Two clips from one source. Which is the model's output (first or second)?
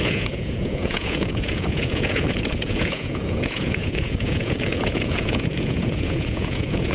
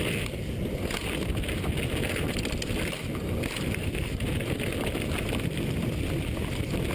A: first